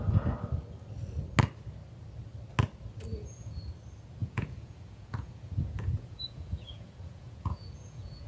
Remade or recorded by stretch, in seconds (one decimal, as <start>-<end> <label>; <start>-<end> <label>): 0.0-3.1 recorded; 3.1-3.6 remade; 3.6-4.2 recorded; 4.2-8.3 remade